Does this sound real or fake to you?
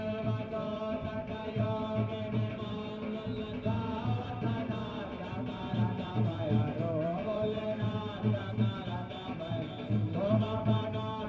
real